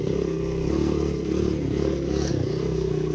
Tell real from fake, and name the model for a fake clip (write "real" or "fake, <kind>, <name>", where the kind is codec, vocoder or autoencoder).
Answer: fake, codec, SNAC